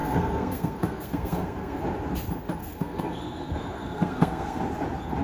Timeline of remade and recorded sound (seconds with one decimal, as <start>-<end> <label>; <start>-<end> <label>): 0.0-1.8 remade; 1.8-2.6 recorded; 2.6-4.6 remade; 4.6-5.2 recorded